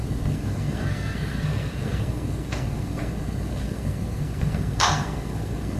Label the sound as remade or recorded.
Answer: remade